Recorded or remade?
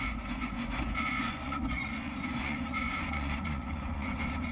remade